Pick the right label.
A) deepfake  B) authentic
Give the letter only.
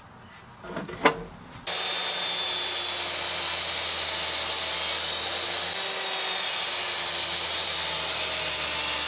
B